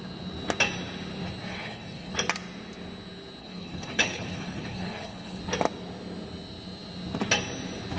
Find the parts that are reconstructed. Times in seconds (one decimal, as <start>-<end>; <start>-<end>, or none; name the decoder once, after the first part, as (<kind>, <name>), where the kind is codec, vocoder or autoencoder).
1.5-2.1 (codec, HILCodec); 3.4-5.4